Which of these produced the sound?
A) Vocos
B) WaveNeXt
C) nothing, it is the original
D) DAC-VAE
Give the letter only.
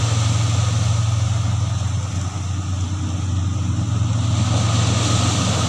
C